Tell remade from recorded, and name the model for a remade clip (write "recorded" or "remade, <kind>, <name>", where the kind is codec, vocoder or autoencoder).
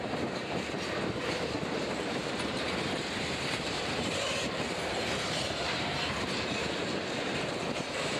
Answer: remade, vocoder, BigVGAN v2